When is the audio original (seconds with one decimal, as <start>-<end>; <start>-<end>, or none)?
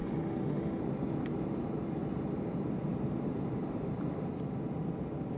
0.8-5.4